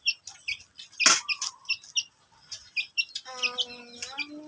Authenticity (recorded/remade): recorded